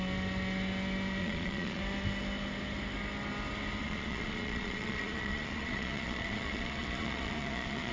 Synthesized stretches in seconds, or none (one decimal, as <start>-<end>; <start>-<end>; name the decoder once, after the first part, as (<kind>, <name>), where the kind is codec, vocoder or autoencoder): 1.2-1.8 (vocoder, Vocos); 3.8-7.9